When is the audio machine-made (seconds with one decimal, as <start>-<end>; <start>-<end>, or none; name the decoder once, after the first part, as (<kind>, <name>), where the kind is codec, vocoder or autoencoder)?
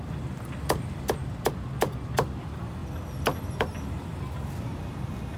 none